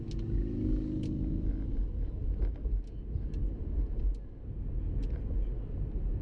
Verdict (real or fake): real